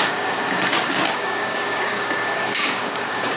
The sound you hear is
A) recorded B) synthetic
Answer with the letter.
B